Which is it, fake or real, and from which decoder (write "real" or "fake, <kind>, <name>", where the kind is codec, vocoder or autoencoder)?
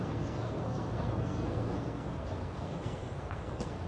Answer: fake, codec, SNAC